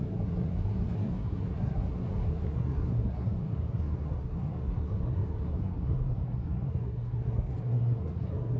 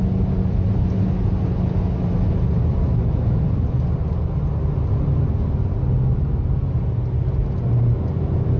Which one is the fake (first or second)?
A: first